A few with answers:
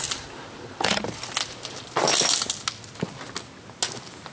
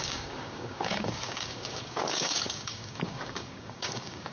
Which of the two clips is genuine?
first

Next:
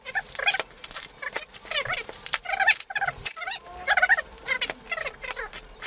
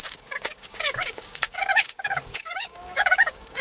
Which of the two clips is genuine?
first